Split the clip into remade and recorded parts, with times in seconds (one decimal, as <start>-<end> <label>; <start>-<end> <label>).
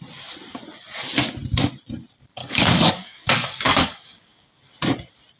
0.0-2.4 recorded; 2.4-4.5 remade; 4.5-5.4 recorded